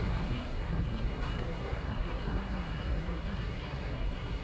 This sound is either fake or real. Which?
fake